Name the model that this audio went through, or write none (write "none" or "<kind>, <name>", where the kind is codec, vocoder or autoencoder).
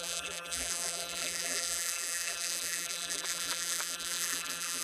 vocoder, BigVGAN v2